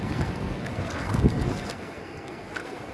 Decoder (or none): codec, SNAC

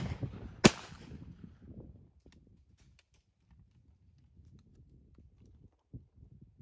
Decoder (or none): none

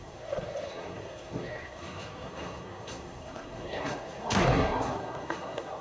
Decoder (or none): codec, SNAC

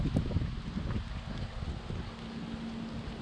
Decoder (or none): none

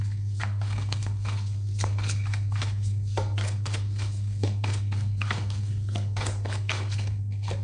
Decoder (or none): codec, SNAC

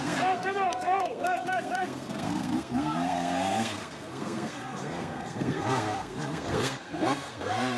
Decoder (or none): codec, SNAC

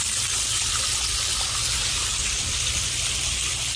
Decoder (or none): none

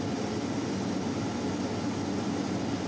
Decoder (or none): none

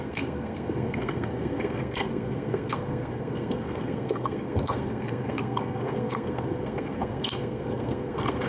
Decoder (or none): codec, SNAC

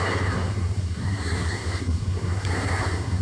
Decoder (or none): codec, SNAC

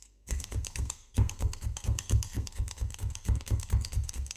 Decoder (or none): codec, SNAC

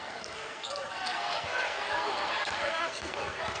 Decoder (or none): codec, SNAC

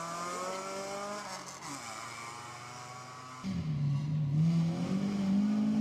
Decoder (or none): none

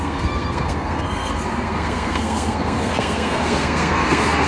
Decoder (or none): codec, SNAC